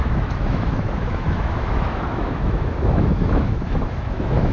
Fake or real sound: fake